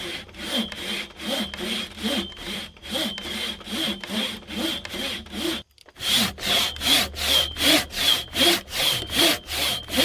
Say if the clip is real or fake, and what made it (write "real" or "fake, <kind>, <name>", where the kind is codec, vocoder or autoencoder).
real